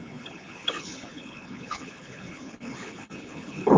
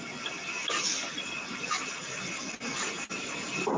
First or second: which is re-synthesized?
first